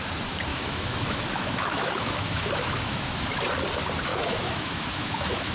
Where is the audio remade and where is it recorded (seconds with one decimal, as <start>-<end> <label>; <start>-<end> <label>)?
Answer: 0.0-0.5 recorded; 0.5-3.5 remade; 3.5-4.1 recorded; 4.1-5.5 remade